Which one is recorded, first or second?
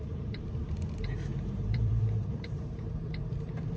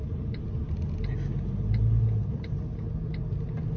second